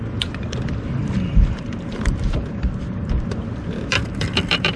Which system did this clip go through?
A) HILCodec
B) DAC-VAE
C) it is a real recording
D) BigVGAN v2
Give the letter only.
D